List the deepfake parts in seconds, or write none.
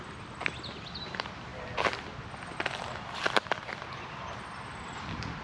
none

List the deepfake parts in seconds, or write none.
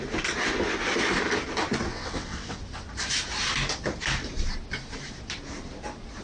1.9-2.6 (vocoder, WaveNeXt)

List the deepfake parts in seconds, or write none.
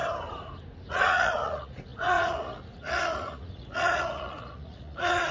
0.9-5.3 (vocoder, Vocos)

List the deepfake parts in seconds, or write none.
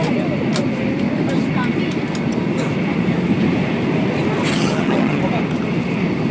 4.5-5.2 (vocoder, HiFi-GAN)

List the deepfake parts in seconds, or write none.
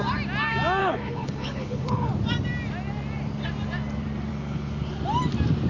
0.8-2.1 (codec, HILCodec); 4.3-4.9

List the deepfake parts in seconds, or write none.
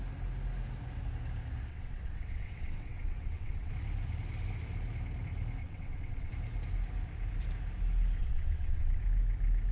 1.7-3.7 (vocoder, WaveNeXt); 5.6-6.3; 8.2-9.0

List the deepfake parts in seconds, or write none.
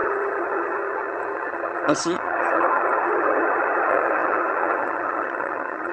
0.0-5.9 (vocoder, HiFi-GAN)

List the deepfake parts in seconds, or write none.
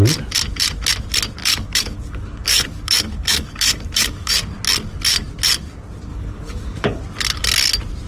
1.4-4.3 (codec, DAC); 6.1-7.0